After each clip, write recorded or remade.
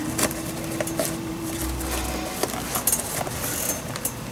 recorded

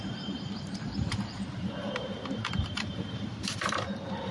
remade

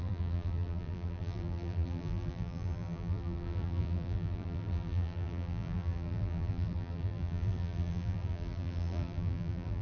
remade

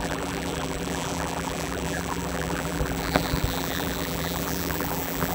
remade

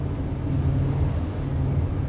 recorded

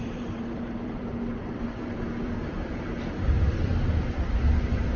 remade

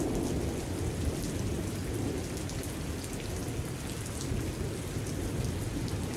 recorded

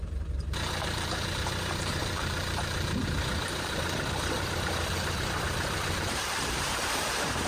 remade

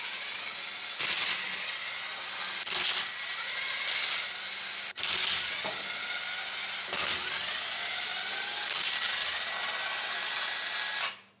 recorded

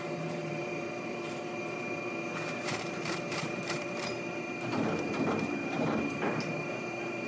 remade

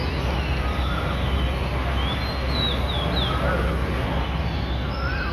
recorded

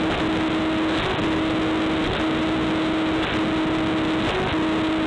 recorded